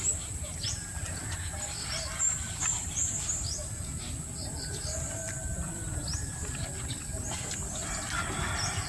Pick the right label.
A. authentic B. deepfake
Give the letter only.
B